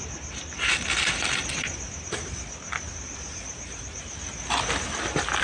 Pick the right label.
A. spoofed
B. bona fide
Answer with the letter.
B